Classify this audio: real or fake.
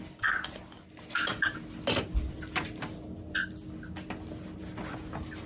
real